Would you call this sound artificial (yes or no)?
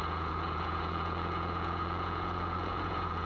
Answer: yes